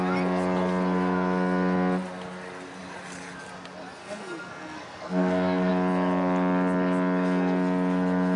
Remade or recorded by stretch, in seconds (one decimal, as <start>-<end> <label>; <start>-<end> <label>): 0.0-4.0 recorded; 4.0-5.7 remade; 5.7-8.4 recorded